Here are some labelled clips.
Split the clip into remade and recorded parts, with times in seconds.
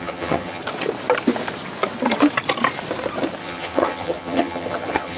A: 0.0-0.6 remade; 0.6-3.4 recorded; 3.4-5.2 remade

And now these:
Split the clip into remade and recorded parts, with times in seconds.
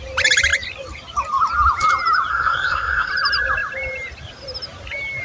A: 0.0-2.3 recorded; 2.3-3.1 remade; 3.1-5.2 recorded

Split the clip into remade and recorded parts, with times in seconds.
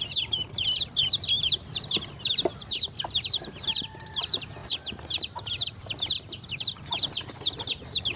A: 0.0-8.2 remade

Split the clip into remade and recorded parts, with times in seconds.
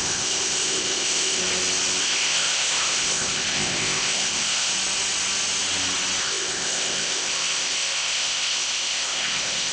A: 0.0-1.4 remade; 1.4-2.0 recorded; 2.0-4.7 remade; 4.7-6.2 recorded; 6.2-9.7 remade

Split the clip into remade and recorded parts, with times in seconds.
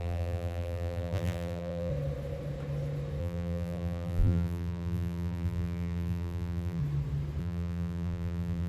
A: 0.0-1.9 remade; 1.9-3.2 recorded; 3.2-6.8 remade; 6.8-7.4 recorded; 7.4-8.7 remade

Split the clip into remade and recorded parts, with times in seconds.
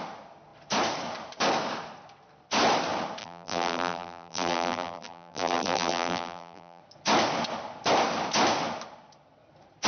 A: 0.0-3.2 recorded; 3.2-6.8 remade; 6.8-9.9 recorded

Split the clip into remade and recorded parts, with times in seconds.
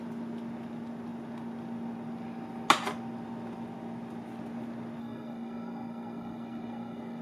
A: 0.0-5.0 recorded; 5.0-7.2 remade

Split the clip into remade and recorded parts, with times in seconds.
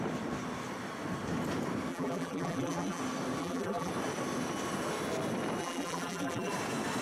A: 0.0-1.9 recorded; 1.9-3.0 remade; 3.0-3.4 recorded; 3.4-3.9 remade; 3.9-5.6 recorded; 5.6-6.5 remade; 6.5-7.0 recorded